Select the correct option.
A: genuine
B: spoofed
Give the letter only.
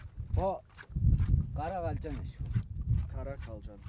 A